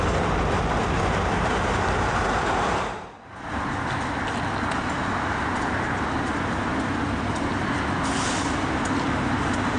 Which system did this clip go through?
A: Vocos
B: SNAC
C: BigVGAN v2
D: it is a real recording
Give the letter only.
D